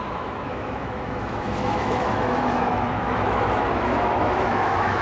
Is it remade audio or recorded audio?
remade